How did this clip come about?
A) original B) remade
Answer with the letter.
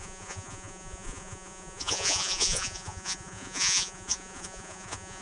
B